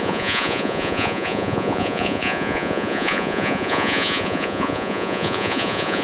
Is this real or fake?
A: fake